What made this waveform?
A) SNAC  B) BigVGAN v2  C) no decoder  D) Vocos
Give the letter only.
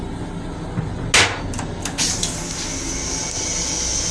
C